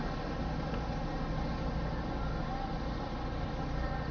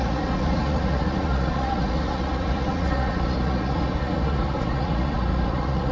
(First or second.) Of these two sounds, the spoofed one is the second